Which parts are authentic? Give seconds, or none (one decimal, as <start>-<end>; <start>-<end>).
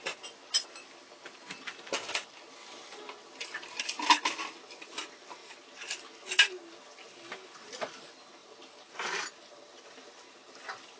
0.0-11.0